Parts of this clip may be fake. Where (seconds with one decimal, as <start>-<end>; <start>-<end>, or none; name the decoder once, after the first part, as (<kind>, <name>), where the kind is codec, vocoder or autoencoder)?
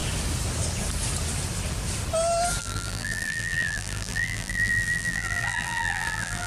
2.6-6.5 (vocoder, BigVGAN v2)